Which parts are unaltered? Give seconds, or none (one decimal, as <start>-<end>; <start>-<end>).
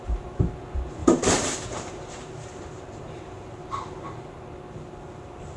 0.0-1.0; 4.4-5.6